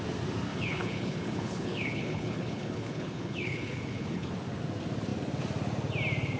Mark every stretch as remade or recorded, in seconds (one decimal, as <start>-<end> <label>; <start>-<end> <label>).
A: 0.0-0.5 recorded; 0.5-4.3 remade; 4.3-6.4 recorded